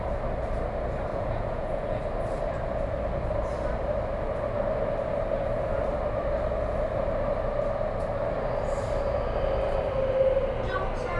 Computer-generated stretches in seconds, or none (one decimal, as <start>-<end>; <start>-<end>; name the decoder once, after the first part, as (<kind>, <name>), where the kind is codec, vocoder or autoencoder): 1.1-2.0 (vocoder, Vocos)